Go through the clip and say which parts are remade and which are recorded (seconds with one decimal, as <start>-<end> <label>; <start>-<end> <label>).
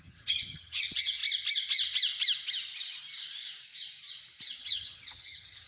0.0-1.2 remade; 1.2-4.6 recorded; 4.6-5.7 remade